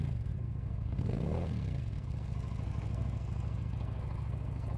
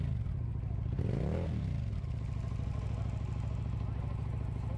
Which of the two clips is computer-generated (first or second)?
first